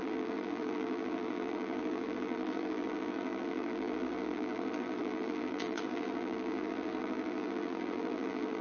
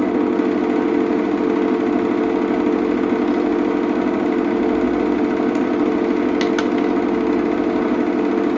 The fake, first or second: first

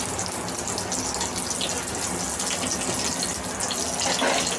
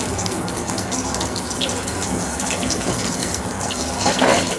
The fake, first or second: second